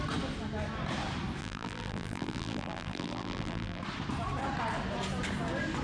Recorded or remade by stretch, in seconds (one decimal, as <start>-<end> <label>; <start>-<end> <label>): 0.0-1.4 recorded; 1.4-3.8 remade; 3.8-5.8 recorded